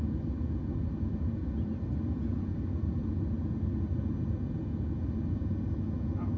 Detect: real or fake real